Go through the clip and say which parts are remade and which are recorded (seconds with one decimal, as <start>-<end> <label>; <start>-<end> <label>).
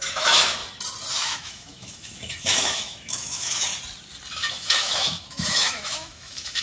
0.0-0.6 remade; 0.6-1.1 recorded; 1.1-3.7 remade; 3.7-4.3 recorded; 4.3-6.6 remade